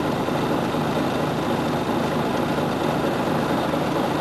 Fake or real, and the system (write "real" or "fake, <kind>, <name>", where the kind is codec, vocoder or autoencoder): real